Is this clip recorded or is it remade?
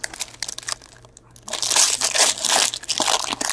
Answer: recorded